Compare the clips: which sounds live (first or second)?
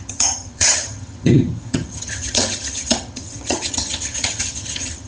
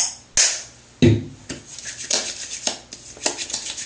second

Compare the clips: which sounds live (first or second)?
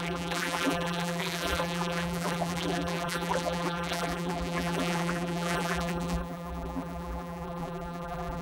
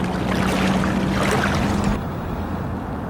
second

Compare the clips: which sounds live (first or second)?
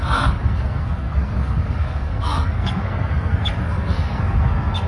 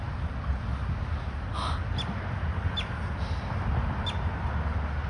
second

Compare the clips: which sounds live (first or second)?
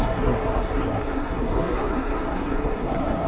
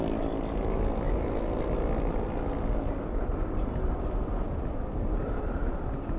second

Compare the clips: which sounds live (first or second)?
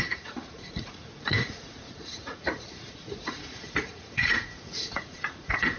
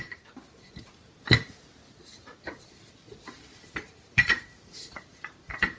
second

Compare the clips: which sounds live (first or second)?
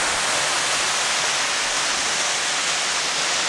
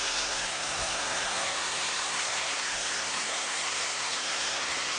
first